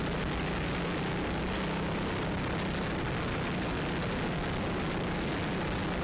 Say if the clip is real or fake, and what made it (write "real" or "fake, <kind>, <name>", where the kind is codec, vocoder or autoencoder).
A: real